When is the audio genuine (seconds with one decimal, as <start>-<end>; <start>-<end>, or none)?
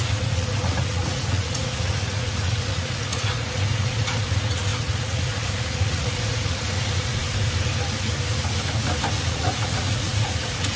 7.1-9.3